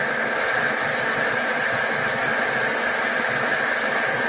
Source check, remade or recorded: recorded